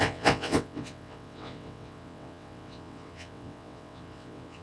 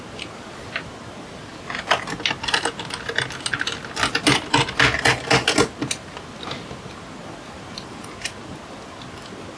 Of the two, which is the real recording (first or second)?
second